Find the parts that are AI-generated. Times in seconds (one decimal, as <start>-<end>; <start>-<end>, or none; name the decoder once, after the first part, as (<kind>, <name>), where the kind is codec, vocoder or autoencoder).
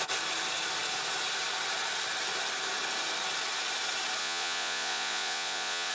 4.2-5.9 (vocoder, Vocos)